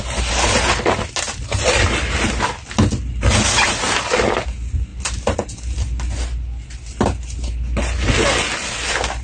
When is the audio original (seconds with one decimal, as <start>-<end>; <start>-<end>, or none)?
0.0-9.2

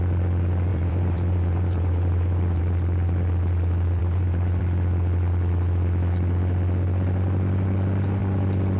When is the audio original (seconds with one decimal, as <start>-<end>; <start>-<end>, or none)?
0.0-0.7; 2.6-4.0; 4.6-8.8

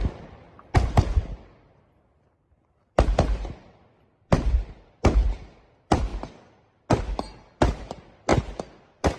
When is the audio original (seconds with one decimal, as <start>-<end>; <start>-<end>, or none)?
6.1-7.5

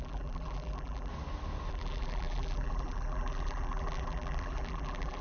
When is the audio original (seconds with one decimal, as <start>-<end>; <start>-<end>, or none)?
1.1-1.7

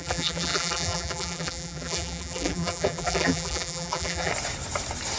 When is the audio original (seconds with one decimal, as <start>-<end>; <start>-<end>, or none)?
4.3-5.2